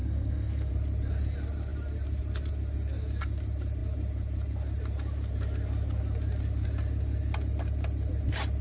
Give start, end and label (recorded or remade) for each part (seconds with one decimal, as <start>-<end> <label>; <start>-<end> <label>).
0.0-0.7 remade; 0.7-8.6 recorded